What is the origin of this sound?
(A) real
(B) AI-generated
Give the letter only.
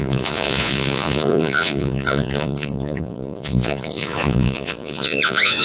B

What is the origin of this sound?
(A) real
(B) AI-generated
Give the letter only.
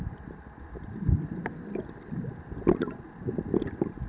A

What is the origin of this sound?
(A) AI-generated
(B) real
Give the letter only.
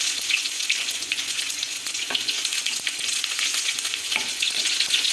A